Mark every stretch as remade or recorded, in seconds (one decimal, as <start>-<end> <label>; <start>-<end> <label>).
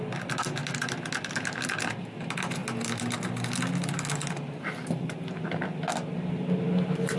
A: 0.0-7.2 recorded